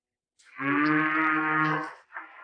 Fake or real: real